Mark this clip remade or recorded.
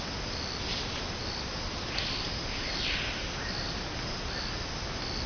recorded